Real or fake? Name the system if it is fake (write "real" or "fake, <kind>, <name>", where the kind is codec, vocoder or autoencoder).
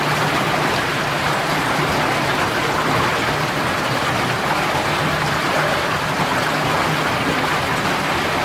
real